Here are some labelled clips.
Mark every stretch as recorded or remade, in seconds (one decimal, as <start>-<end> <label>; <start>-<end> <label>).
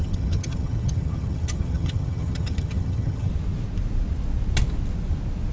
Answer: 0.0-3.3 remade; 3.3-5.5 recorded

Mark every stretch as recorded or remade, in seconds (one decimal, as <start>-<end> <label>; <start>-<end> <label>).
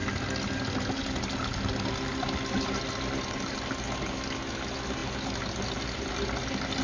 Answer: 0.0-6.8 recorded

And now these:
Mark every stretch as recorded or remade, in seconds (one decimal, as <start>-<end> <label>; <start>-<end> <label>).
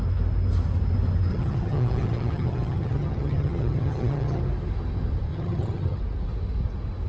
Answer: 0.0-1.3 recorded; 1.3-4.4 remade; 4.4-5.3 recorded; 5.3-6.0 remade; 6.0-7.1 recorded